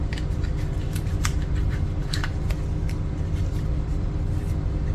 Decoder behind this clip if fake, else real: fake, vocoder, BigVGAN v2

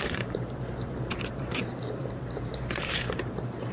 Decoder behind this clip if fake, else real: fake, vocoder, BigVGAN v2